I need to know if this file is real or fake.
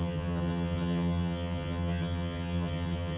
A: fake